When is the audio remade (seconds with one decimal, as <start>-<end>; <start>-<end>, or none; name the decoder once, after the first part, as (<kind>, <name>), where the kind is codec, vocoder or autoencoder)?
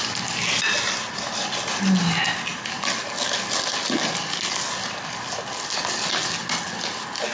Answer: none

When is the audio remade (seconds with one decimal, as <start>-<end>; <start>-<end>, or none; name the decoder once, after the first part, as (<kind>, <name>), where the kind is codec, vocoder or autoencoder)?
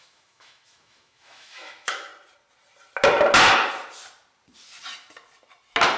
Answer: 0.0-2.1 (autoencoder, DAC-VAE)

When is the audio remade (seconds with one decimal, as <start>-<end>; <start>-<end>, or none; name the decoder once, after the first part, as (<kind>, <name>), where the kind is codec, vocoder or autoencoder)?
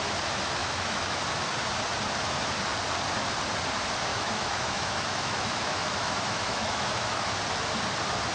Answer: 0.6-1.2 (autoencoder, DAC-VAE); 4.1-7.3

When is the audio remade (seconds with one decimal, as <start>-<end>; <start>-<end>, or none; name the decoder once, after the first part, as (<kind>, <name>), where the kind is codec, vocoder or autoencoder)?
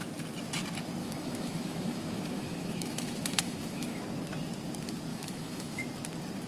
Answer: 1.0-4.0 (autoencoder, DAC-VAE); 5.1-5.8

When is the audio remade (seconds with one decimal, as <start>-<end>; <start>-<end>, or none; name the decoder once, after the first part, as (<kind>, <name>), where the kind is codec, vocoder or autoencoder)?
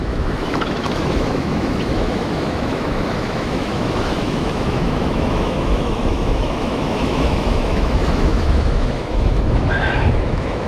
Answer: 0.0-10.7 (autoencoder, DAC-VAE)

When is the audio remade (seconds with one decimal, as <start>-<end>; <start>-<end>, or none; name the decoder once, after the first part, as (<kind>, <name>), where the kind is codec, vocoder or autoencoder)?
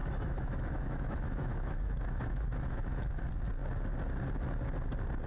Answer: 0.0-3.2 (autoencoder, DAC-VAE)